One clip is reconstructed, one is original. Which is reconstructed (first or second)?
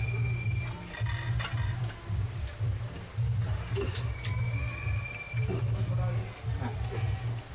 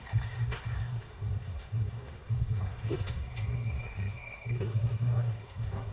second